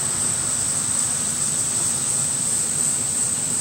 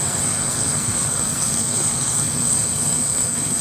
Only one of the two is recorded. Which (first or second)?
first